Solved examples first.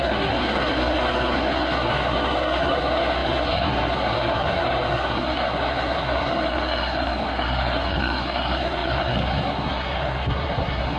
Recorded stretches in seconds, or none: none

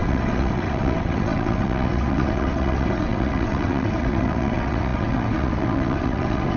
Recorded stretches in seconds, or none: none

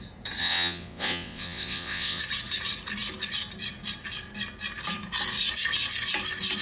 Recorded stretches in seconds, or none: 0.0-0.4; 2.2-6.6

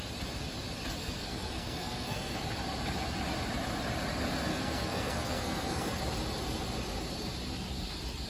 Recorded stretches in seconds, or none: 0.0-1.0; 2.4-4.5; 6.0-8.3

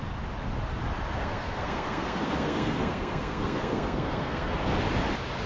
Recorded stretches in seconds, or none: 0.0-1.2; 4.5-5.5

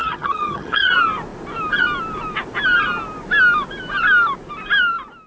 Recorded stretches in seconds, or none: 0.9-5.3